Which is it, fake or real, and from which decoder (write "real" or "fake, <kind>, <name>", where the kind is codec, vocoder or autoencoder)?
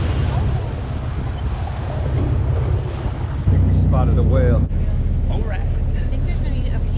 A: real